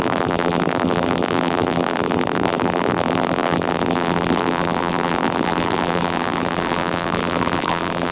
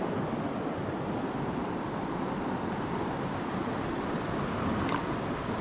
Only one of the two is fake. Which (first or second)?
first